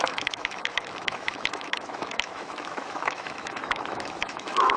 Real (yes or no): no